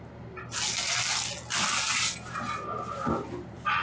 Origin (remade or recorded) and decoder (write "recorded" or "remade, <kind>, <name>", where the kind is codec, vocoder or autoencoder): recorded